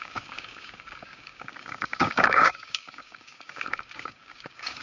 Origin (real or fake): fake